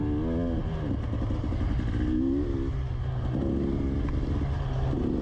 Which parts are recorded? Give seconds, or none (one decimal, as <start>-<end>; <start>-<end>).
0.0-5.2